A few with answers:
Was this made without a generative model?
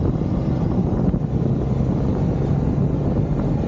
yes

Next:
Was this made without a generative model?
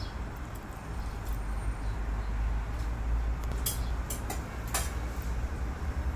yes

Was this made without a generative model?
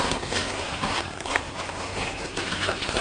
no